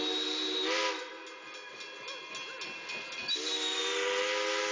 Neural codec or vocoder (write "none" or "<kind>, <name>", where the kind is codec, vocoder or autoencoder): none